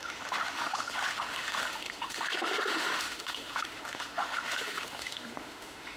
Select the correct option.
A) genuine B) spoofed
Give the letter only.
B